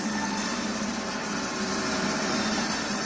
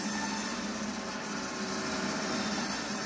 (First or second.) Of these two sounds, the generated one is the first